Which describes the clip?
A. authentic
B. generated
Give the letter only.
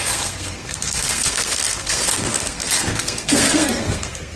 B